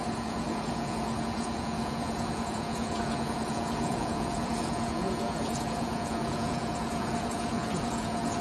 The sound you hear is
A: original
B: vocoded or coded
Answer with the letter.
B